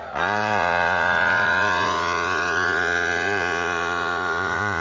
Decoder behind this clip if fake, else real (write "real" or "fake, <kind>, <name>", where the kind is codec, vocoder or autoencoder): fake, vocoder, Vocos